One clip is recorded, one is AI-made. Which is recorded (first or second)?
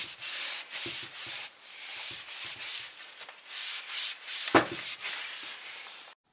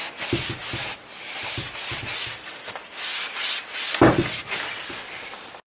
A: second